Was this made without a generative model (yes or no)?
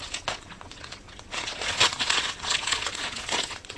no